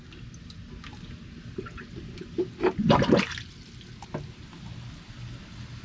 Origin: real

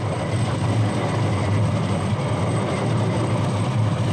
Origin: real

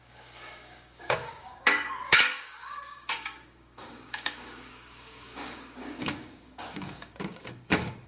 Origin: fake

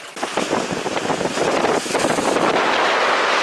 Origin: real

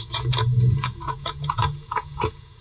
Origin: fake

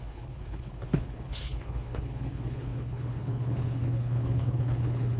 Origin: fake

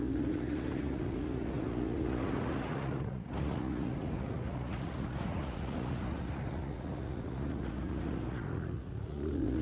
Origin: fake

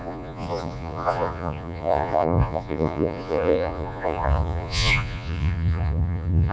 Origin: fake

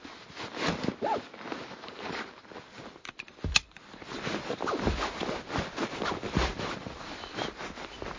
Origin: real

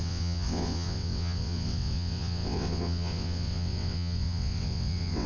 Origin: fake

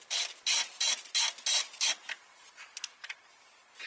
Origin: real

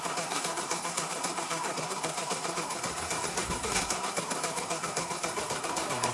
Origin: fake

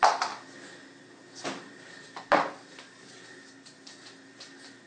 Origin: real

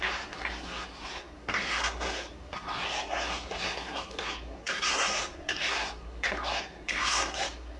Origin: fake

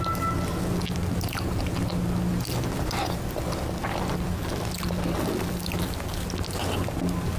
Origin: real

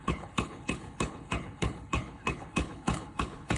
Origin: fake